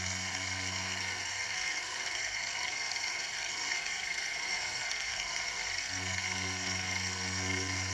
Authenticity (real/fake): fake